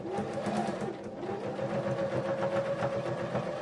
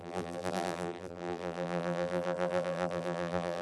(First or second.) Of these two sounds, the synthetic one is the second